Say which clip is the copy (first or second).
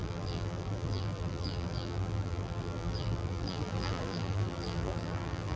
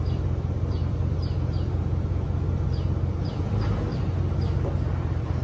first